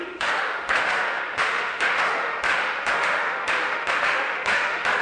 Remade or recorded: remade